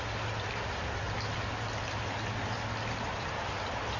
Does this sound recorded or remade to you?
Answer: recorded